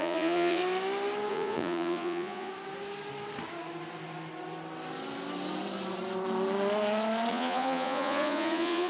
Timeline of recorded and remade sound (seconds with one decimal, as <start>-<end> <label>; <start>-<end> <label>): 0.0-0.6 remade; 0.6-1.3 recorded; 1.3-2.5 remade; 2.5-7.3 recorded; 7.3-8.9 remade